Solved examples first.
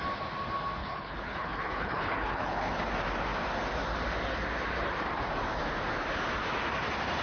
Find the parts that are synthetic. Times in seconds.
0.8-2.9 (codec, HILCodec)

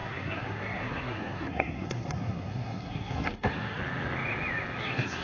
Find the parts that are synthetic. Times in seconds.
0.0-3.8 (codec, SNAC); 4.8-5.2

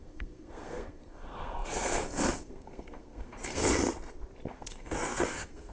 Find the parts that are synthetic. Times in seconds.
0.0-3.6 (codec, SNAC); 4.5-5.7

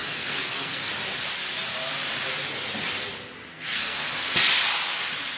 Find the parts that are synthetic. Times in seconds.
0.0-0.9 (codec, SNAC); 3.5-4.1

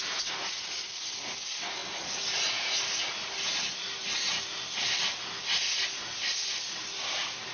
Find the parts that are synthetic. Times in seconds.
none